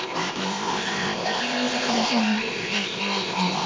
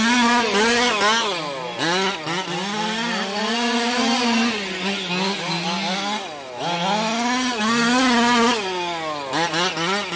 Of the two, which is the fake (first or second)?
first